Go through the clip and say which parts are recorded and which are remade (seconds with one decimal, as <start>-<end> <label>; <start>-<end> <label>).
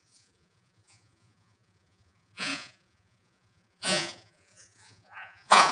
0.0-5.7 remade